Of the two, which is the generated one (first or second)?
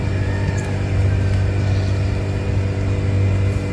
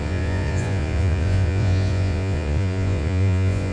second